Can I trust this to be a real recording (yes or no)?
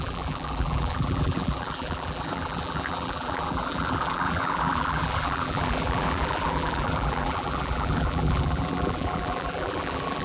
no